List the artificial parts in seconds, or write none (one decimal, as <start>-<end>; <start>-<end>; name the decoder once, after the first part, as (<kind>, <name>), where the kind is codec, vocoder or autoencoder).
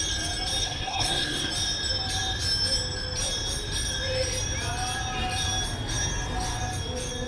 0.6-1.5 (codec, SNAC)